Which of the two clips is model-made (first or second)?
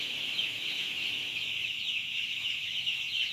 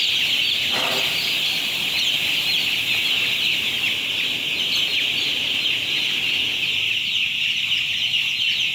first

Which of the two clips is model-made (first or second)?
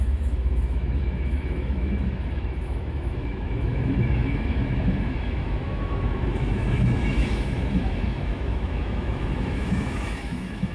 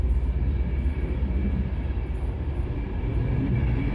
first